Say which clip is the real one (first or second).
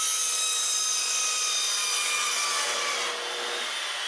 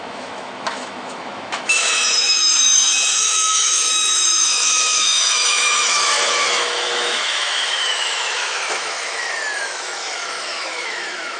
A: first